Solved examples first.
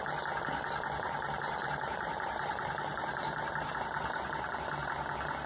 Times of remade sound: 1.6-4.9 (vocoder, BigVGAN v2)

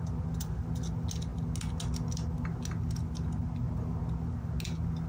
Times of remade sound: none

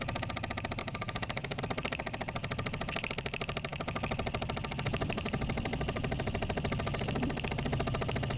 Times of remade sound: 0.8-1.6 (codec, DAC)